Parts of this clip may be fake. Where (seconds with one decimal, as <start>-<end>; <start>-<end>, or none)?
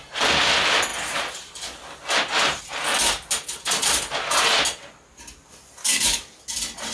5.8-6.4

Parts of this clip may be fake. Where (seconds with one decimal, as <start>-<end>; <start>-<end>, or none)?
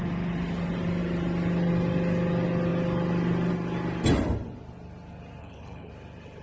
5.4-5.9